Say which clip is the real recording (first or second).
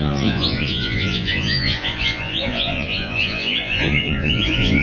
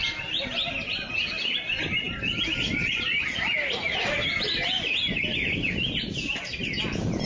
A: second